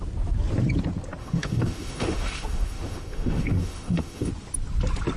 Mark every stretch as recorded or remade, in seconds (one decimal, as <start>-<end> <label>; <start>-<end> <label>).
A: 0.0-1.2 recorded; 1.2-4.3 remade; 4.3-5.2 recorded